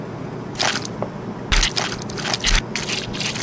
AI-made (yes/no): no